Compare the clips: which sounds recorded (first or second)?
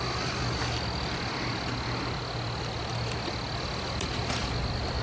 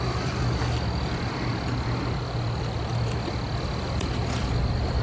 first